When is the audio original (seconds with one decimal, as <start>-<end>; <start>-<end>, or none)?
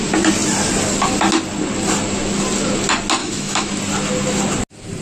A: 0.0-3.2; 3.7-5.0